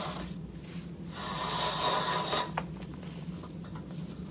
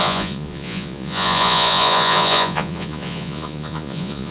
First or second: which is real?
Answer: first